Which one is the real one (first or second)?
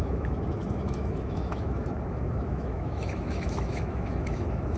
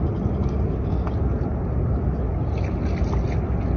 second